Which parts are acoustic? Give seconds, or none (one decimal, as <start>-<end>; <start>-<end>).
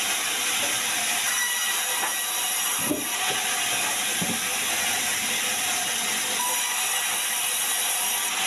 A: 0.0-8.5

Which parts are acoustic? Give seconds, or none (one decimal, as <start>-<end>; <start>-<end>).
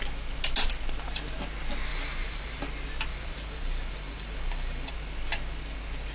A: 0.0-1.9; 2.6-3.1; 4.9-6.1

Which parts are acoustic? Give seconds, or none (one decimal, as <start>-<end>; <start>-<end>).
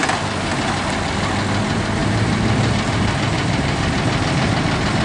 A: 0.0-2.0; 2.8-3.3; 4.0-5.0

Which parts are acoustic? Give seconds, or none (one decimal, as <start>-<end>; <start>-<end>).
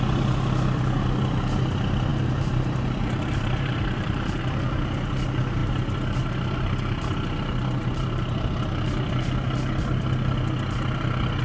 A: 0.0-2.1; 4.4-7.8; 8.6-11.4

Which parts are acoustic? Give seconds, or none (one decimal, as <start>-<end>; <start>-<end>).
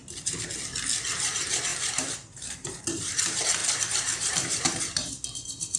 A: 0.0-1.1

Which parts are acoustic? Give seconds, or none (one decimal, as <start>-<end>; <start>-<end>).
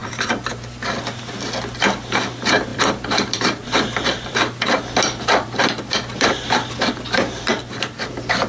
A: 0.5-2.7; 6.8-7.5; 8.1-8.5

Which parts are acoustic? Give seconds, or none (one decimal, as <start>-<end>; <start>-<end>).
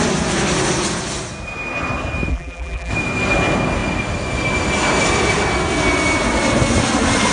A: 0.0-2.3; 2.9-7.3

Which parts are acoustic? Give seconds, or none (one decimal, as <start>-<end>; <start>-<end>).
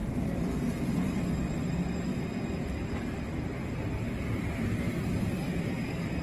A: 1.2-3.0; 5.2-6.2